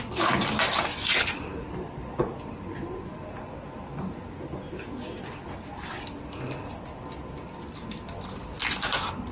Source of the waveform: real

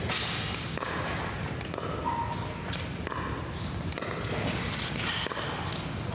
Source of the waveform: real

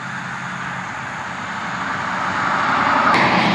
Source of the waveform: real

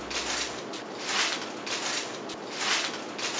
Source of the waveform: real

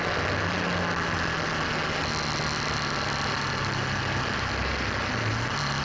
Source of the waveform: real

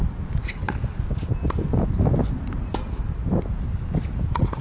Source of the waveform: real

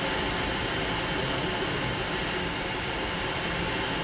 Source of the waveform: real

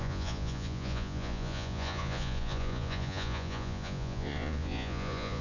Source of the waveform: fake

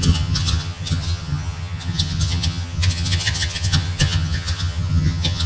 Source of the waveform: fake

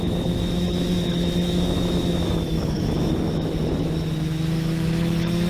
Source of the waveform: fake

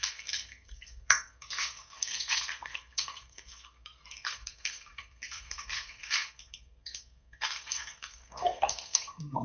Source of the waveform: fake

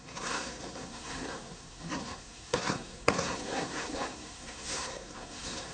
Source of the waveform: fake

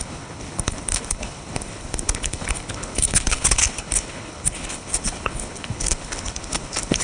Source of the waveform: fake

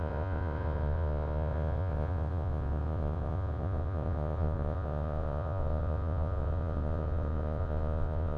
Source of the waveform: fake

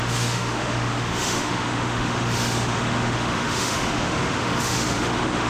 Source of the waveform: fake